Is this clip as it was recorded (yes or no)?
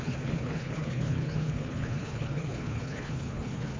no